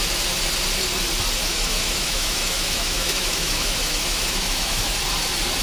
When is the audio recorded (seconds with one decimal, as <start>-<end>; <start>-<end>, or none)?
0.0-1.5; 4.9-5.6